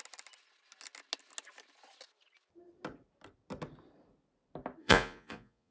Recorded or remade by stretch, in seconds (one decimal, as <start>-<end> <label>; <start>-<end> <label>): 0.0-4.8 recorded; 4.8-5.7 remade